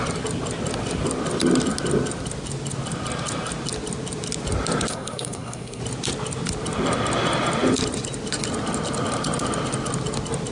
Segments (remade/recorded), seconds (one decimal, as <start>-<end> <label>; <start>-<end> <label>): 0.0-4.9 recorded; 4.9-5.8 remade; 5.8-10.5 recorded